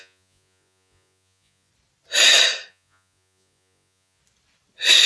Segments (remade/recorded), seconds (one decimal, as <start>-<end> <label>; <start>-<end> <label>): 0.0-1.7 remade; 1.7-2.7 recorded; 2.7-4.2 remade; 4.2-5.1 recorded